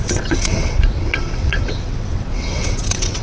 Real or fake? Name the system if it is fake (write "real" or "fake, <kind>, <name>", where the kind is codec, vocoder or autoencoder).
fake, vocoder, WaveNeXt